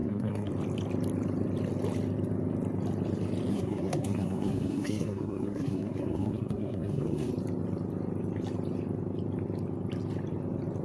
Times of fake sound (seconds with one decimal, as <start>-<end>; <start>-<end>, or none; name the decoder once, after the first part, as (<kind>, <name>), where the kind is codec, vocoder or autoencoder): 0.0-0.5 (codec, SNAC); 3.5-7.3